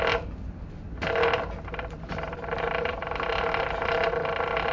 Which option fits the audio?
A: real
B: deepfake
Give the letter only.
A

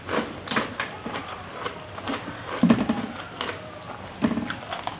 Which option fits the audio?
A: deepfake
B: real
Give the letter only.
B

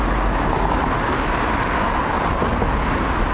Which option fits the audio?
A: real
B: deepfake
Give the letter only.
A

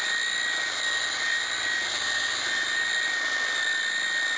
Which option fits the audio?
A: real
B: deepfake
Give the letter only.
A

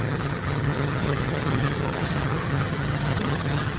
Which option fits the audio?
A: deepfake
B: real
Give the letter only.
A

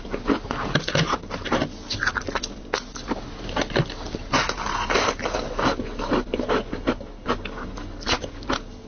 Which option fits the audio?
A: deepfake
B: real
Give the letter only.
B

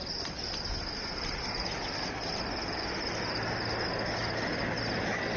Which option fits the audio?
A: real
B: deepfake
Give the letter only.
A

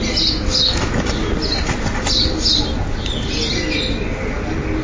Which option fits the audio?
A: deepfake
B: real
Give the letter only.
B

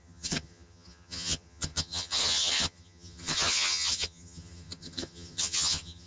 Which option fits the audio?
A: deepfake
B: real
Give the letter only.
A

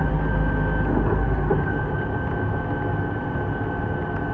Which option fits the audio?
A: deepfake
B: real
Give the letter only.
B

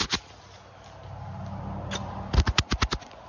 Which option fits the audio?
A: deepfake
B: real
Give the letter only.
B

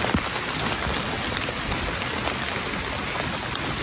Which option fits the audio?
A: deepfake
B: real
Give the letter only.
B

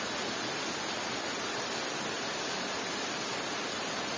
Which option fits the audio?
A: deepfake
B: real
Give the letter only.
B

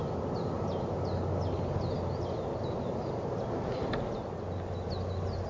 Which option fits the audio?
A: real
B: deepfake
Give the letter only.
A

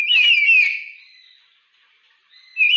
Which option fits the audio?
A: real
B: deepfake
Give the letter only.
A